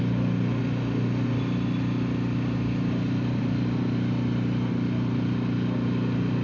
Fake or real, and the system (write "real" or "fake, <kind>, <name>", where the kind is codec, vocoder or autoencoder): real